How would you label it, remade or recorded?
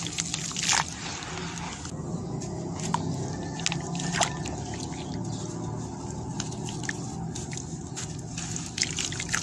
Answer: recorded